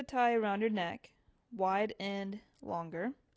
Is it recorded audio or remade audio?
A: recorded